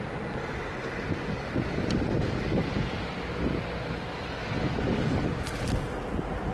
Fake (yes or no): no